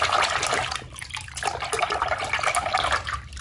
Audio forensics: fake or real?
real